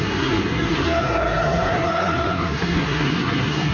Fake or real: fake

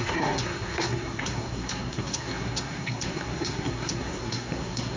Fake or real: fake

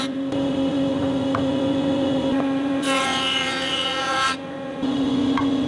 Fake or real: fake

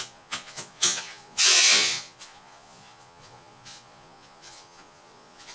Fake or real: fake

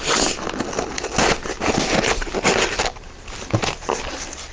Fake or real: real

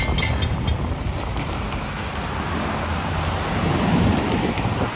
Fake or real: real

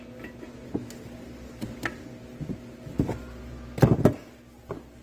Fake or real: real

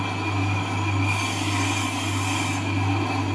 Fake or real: real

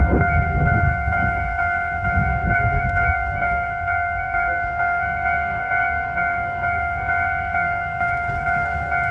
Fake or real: fake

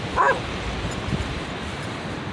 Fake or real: fake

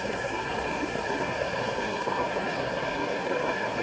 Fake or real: fake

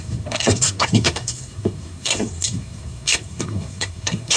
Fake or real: fake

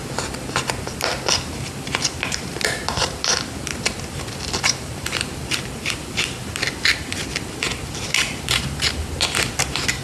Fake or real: fake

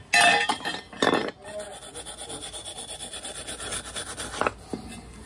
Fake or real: real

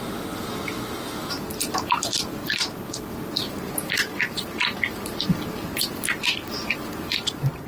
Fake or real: real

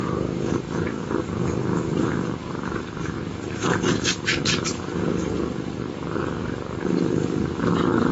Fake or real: fake